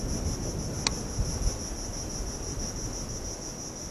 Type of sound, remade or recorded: recorded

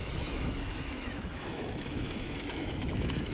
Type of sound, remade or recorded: remade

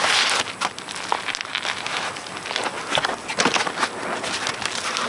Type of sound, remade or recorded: recorded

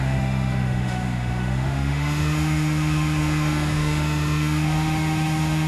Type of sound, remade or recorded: remade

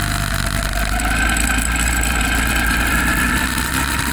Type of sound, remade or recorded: recorded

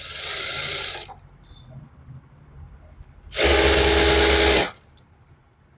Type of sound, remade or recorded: recorded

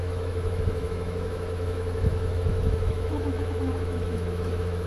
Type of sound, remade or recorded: remade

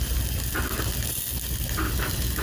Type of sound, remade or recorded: recorded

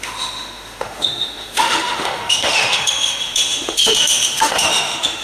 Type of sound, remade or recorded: remade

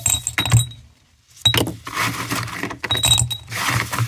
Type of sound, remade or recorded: recorded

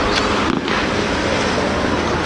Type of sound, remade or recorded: recorded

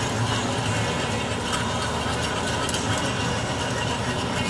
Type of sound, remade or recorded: recorded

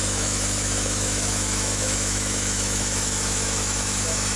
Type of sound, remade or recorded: remade